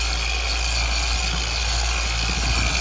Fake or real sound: real